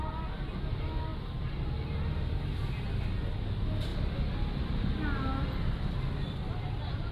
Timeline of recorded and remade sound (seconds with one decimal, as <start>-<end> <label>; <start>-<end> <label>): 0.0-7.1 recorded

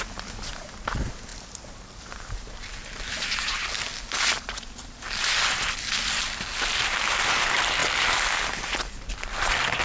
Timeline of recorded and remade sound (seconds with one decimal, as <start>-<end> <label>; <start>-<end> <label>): 0.0-9.8 recorded

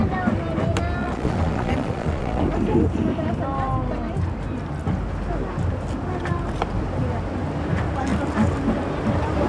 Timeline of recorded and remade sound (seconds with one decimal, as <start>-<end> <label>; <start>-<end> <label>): 0.0-1.0 recorded; 1.0-2.4 remade; 2.4-9.5 recorded

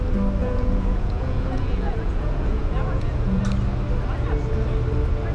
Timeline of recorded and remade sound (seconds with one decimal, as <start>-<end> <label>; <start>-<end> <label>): 0.0-0.4 recorded; 0.4-3.4 remade; 3.4-5.3 recorded